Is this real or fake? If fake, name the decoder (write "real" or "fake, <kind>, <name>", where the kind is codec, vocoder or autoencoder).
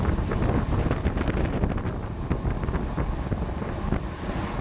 real